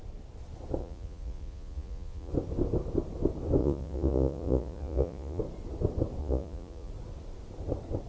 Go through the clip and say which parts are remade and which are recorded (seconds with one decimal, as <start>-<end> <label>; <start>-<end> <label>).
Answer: 0.0-0.8 recorded; 0.8-2.3 remade; 2.3-3.6 recorded; 3.6-5.4 remade; 5.4-6.2 recorded; 6.2-6.9 remade; 6.9-8.1 recorded